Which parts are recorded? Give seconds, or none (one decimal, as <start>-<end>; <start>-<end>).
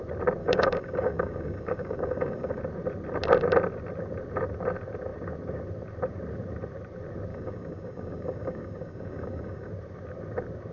0.0-0.4; 2.6-7.3; 9.7-10.7